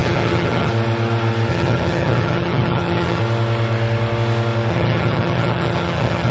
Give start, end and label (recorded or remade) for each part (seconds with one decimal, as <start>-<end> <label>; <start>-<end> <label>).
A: 0.0-0.7 remade; 0.7-1.5 recorded; 1.5-3.2 remade; 3.2-4.7 recorded; 4.7-6.3 remade